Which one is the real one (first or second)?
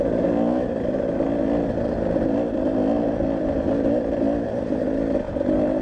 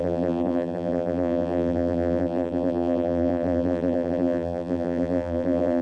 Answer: first